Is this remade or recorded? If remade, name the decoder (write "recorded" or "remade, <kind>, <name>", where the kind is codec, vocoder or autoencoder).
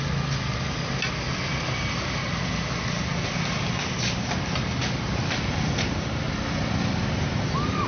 recorded